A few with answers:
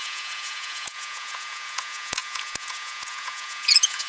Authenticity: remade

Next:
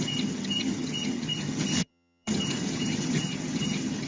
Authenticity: remade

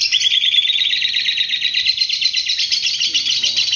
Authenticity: recorded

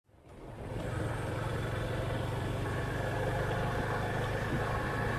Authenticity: recorded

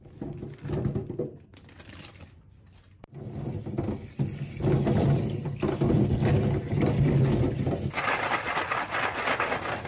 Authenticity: recorded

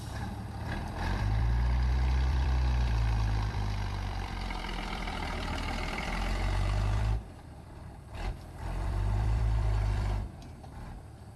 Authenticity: remade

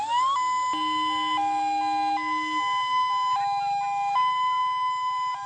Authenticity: recorded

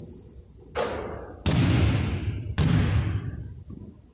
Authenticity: recorded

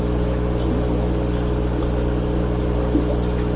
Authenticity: recorded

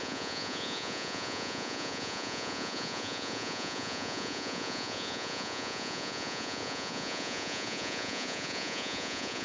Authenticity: remade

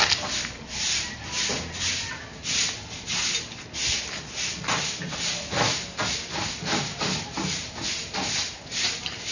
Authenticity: recorded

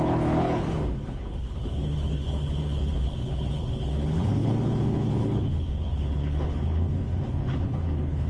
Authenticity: remade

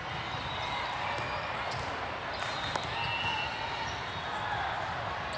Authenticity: recorded